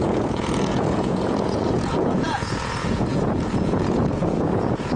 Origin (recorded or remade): remade